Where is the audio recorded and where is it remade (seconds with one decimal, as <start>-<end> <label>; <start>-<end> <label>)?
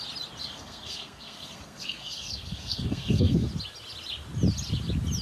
0.0-0.4 recorded; 0.4-3.5 remade; 3.5-5.2 recorded